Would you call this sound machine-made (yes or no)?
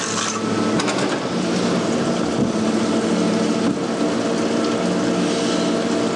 no